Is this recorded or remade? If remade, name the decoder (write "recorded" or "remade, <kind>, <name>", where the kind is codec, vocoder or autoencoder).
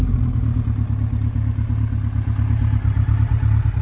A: recorded